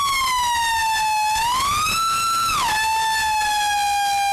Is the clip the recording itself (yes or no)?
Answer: yes